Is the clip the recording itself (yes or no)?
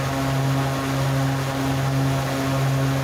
yes